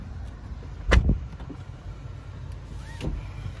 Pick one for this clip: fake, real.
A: real